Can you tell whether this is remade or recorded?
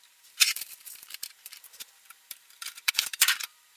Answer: remade